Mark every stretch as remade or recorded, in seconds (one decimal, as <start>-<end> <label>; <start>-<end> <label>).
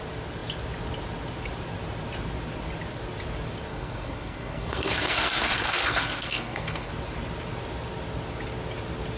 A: 0.0-3.7 recorded; 3.7-6.9 remade; 6.9-9.2 recorded